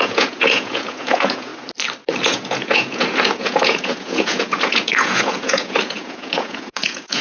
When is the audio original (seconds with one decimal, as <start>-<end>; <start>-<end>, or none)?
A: 1.5-2.2